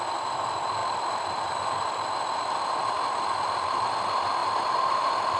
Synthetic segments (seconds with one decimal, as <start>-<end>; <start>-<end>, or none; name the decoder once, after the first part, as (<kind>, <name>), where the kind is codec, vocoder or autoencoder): 0.8-4.0 (vocoder, BigVGAN v2)